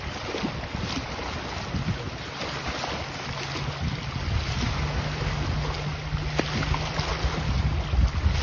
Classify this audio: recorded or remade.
recorded